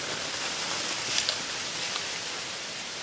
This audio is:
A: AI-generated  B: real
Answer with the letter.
B